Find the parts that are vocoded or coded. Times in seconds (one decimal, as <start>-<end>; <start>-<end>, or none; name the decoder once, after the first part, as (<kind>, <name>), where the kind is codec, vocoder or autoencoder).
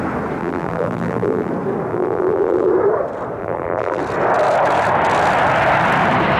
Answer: 0.4-1.5 (vocoder, BigVGAN v2); 1.9-2.7; 3.4-4.0